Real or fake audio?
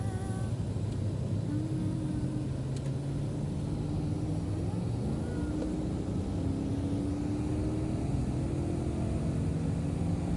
real